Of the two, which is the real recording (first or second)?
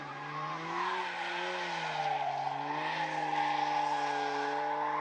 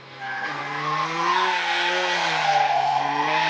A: first